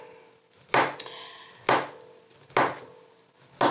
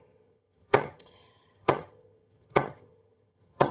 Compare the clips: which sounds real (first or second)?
first